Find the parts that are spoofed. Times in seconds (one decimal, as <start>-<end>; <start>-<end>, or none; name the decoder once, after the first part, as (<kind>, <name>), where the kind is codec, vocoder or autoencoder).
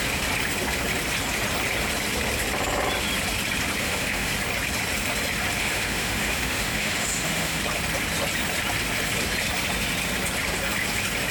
3.8-4.3 (autoencoder, DAC-VAE); 5.6-7.6